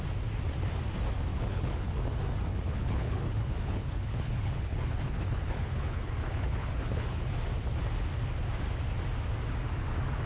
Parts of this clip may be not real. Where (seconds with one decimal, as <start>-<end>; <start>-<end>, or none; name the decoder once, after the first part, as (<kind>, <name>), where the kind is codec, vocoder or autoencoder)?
1.3-2.0 (codec, HILCodec); 2.5-7.3